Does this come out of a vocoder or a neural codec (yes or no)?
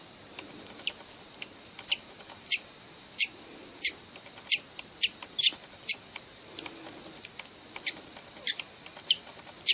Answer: no